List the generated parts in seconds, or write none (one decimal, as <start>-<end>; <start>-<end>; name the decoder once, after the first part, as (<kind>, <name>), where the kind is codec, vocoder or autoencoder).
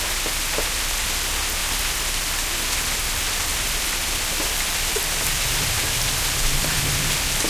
1.6-2.1 (vocoder, BigVGAN v2); 3.5-6.8